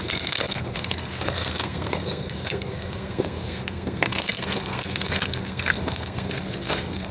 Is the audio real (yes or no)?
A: no